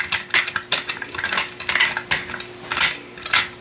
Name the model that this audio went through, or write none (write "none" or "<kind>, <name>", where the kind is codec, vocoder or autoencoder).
none